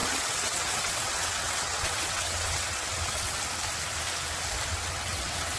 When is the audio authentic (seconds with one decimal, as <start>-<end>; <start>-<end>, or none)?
3.4-4.7